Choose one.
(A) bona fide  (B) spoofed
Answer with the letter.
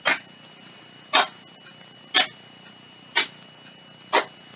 A